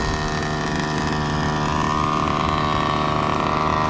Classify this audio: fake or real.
real